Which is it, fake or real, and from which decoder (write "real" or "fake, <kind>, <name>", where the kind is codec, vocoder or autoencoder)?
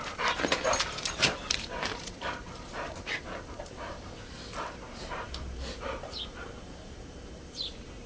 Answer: fake, vocoder, BigVGAN v2